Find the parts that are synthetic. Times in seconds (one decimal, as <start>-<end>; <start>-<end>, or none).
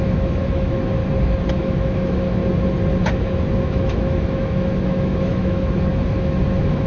0.0-1.0; 1.5-2.4; 3.1-6.9